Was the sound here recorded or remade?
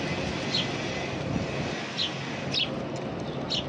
recorded